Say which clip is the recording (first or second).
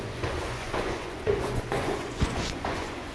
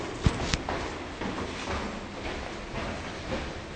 second